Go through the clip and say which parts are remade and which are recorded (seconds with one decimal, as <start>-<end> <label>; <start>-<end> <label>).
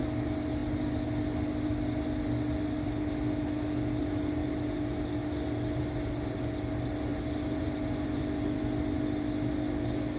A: 0.0-7.1 recorded; 7.1-8.6 remade; 8.6-10.2 recorded